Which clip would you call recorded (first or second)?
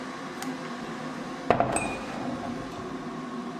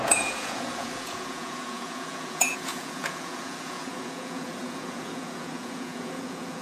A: first